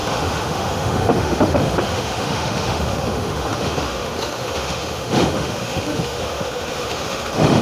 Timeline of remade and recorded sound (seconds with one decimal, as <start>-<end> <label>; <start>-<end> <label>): 0.0-7.6 remade